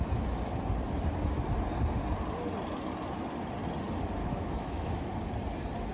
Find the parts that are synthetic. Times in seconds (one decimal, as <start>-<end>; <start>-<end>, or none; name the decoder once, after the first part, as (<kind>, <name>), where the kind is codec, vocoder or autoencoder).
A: 4.2-5.1 (autoencoder, DAC-VAE)